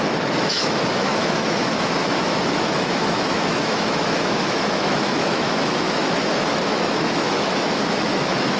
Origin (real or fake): fake